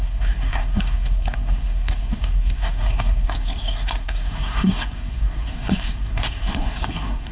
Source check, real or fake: fake